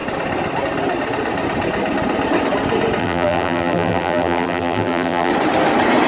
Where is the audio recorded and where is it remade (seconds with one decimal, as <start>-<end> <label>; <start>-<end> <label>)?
0.0-3.0 recorded; 3.0-5.3 remade; 5.3-6.1 recorded